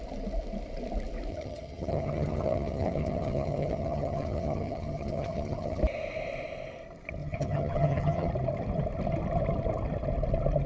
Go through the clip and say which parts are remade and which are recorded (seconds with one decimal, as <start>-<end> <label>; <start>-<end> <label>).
0.0-1.3 recorded; 1.3-5.8 remade; 5.8-7.2 recorded; 7.2-8.3 remade; 8.3-10.7 recorded

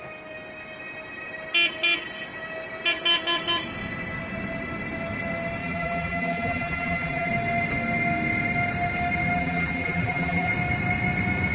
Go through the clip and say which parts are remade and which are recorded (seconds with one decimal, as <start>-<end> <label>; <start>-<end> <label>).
0.0-5.6 recorded; 5.6-7.3 remade; 7.3-9.4 recorded; 9.4-10.5 remade; 10.5-11.5 recorded